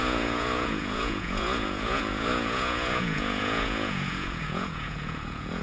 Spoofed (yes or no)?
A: yes